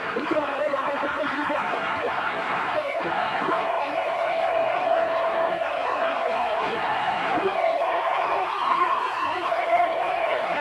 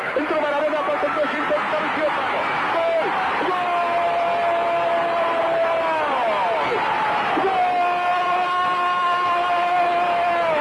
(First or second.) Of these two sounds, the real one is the second